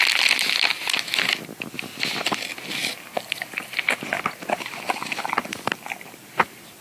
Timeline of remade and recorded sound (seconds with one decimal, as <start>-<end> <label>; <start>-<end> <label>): 0.0-6.8 recorded